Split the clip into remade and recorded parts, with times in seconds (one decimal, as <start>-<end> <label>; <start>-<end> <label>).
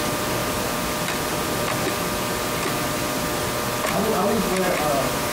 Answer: 0.0-0.4 recorded; 0.4-3.4 remade; 3.4-5.3 recorded